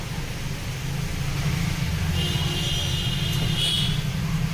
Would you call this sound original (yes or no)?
yes